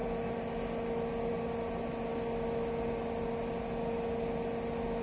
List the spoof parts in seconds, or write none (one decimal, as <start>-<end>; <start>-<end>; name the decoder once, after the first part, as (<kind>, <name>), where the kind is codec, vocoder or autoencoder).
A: none